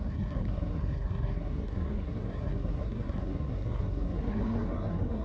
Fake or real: fake